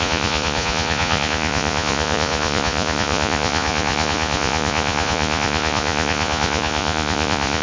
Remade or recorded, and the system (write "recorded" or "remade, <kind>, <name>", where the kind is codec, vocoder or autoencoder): remade, vocoder, Vocos